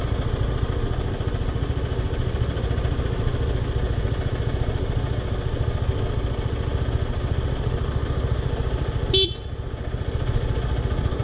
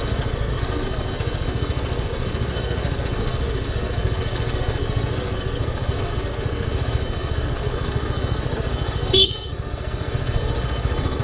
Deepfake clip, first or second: second